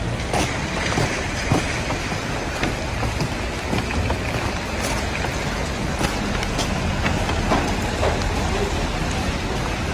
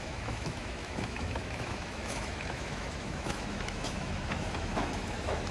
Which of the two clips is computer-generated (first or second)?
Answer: second